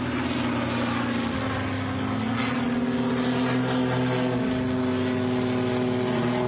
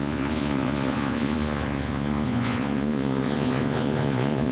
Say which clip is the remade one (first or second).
second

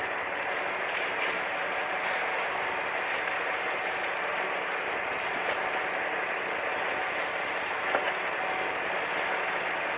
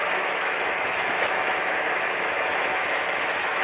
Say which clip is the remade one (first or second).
second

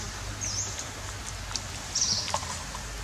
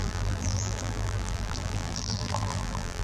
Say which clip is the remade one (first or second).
second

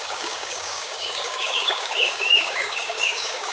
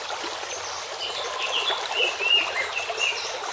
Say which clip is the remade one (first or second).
first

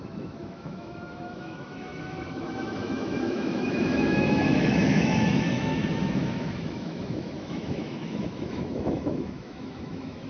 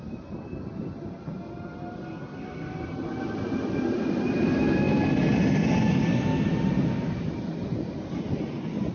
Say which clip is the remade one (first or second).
first